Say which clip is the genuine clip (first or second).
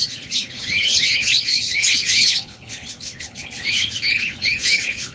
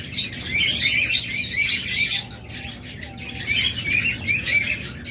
second